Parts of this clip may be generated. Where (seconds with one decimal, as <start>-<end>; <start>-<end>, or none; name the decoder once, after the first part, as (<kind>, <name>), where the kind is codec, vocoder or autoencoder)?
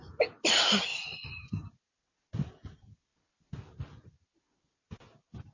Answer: none